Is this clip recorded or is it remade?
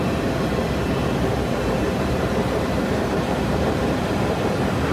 remade